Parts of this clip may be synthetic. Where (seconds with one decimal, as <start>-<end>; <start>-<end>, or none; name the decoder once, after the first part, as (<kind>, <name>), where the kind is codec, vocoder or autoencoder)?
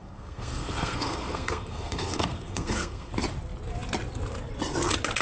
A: 0.0-3.1 (codec, SNAC)